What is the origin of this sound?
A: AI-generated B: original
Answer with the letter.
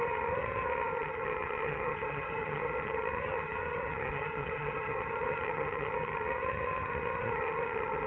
A